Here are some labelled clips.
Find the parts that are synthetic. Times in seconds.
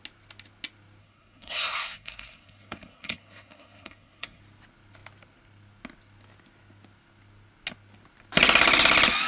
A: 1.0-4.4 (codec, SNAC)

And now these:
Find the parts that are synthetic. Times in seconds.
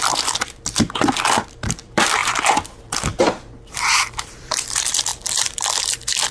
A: 0.0-6.3 (vocoder, BigVGAN v2)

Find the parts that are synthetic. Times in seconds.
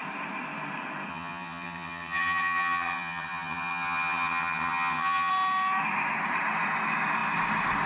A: 1.1-5.3 (vocoder, HiFi-GAN)